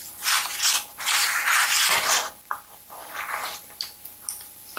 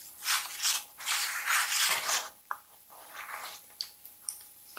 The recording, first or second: first